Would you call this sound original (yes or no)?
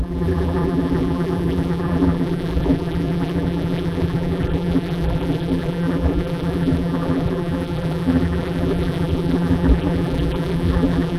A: no